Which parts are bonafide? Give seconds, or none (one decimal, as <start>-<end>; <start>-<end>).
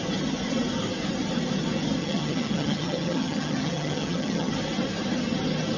0.0-2.0; 4.5-5.8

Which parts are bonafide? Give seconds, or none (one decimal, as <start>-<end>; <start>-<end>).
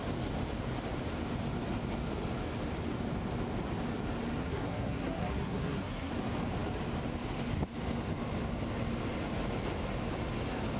0.0-4.4; 6.1-10.8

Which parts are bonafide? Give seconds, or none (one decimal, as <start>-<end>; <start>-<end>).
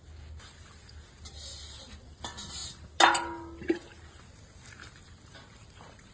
0.0-6.1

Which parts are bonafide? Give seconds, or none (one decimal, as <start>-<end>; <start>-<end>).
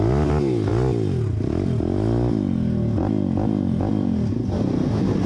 0.0-5.3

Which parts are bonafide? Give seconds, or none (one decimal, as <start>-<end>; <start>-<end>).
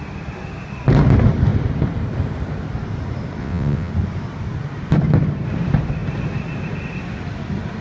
0.0-3.4; 3.9-7.8